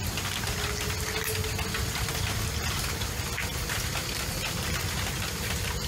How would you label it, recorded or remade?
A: recorded